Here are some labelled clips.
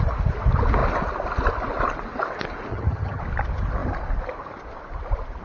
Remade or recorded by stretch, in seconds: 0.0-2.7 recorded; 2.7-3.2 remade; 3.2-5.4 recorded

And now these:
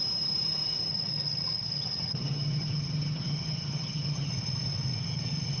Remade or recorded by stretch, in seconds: 0.0-0.9 recorded; 0.9-4.3 remade; 4.3-5.6 recorded

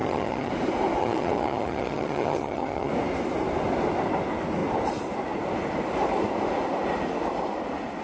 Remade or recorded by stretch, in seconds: 0.0-0.5 remade; 0.5-1.0 recorded; 1.0-2.9 remade; 2.9-8.0 recorded

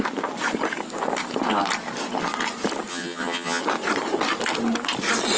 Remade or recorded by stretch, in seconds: 0.0-2.9 recorded; 2.9-3.6 remade; 3.6-5.4 recorded

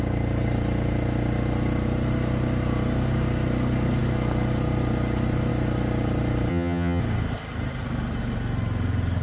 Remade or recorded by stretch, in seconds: 0.0-6.5 recorded; 6.5-7.0 remade; 7.0-9.2 recorded

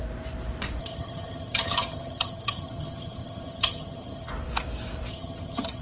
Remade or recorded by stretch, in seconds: 0.0-0.8 recorded; 0.8-4.3 remade; 4.3-5.1 recorded; 5.1-5.8 remade

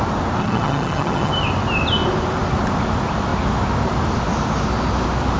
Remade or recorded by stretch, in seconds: 0.0-0.4 recorded; 0.4-1.3 remade; 1.3-5.4 recorded

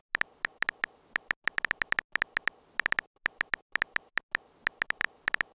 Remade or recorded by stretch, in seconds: 0.0-5.6 recorded